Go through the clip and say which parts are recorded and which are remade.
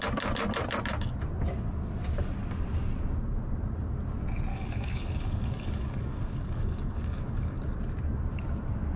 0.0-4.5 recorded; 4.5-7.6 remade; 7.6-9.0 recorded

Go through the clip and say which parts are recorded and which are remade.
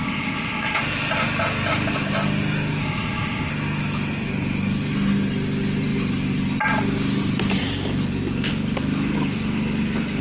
0.0-0.8 remade; 0.8-2.8 recorded; 2.8-3.5 remade; 3.5-10.2 recorded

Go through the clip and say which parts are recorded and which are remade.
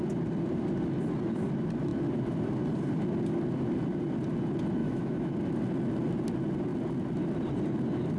0.0-4.8 recorded; 4.8-5.3 remade; 5.3-8.2 recorded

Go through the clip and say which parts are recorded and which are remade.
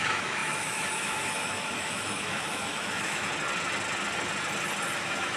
0.0-3.3 remade; 3.3-5.0 recorded; 5.0-5.4 remade